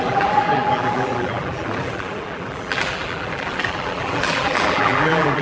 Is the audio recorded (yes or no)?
no